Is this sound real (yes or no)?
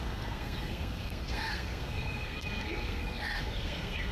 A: no